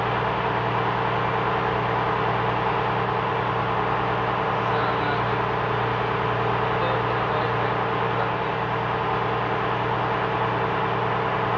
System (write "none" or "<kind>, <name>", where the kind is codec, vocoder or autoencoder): none